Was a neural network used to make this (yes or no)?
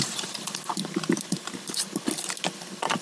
no